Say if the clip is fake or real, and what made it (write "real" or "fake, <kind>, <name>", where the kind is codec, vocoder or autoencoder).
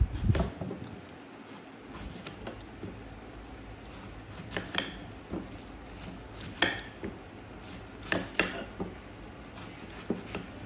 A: real